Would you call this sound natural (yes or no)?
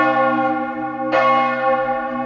yes